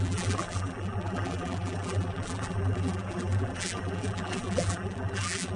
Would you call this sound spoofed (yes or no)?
yes